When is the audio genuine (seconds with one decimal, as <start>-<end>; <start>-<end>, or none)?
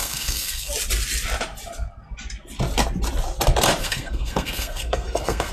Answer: 0.7-3.8